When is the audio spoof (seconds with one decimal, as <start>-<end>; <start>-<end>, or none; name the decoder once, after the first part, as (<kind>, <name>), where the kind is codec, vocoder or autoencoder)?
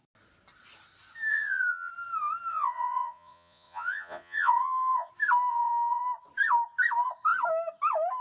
1.3-1.9 (vocoder, Vocos); 2.5-5.1; 5.5-6.0